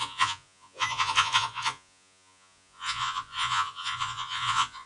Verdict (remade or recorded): remade